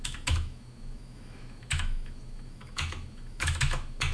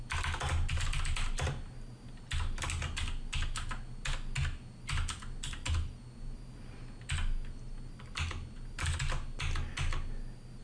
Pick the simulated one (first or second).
first